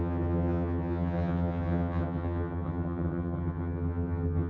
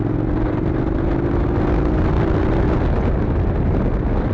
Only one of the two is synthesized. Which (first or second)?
first